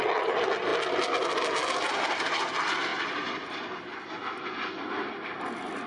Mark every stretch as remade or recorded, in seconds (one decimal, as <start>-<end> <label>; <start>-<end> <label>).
0.0-5.9 recorded